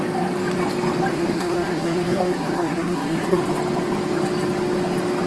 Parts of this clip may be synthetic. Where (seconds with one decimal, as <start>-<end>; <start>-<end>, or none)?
1.1-3.4